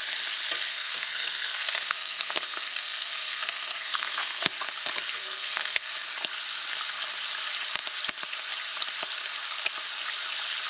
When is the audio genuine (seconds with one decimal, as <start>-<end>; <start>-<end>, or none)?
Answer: 0.0-0.7; 4.5-5.2; 5.9-10.7